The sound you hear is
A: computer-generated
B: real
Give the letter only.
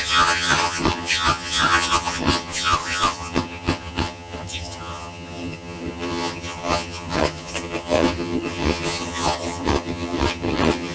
A